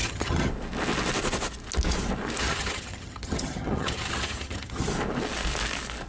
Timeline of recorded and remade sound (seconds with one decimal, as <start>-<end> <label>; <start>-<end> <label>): 0.0-0.5 remade; 0.5-2.4 recorded; 2.4-4.9 remade; 4.9-6.1 recorded